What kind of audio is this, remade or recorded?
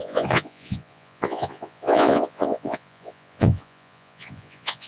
remade